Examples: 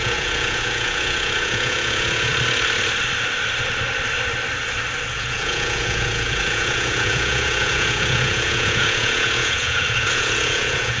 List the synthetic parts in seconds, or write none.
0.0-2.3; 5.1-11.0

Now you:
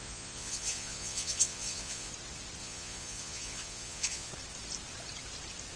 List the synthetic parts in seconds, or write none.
0.0-2.1; 2.6-4.3

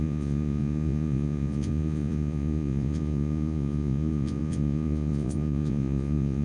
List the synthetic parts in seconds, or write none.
0.0-6.4

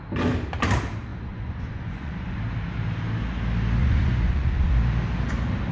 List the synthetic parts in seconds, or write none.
1.1-2.4; 3.8-4.7

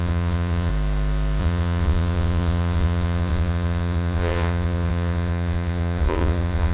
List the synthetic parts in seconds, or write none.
0.0-0.7; 1.4-6.7

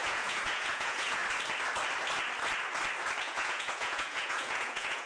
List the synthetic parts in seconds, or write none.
0.0-1.2; 3.2-5.1

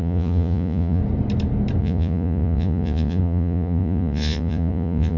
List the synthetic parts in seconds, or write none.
0.0-1.0; 1.8-5.2